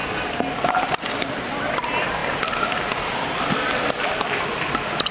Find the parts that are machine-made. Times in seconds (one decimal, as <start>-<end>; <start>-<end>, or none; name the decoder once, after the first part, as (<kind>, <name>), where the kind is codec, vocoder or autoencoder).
0.0-1.1 (vocoder, BigVGAN v2)